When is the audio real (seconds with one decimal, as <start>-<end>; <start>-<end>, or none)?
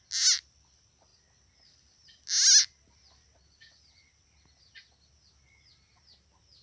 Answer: 0.0-6.6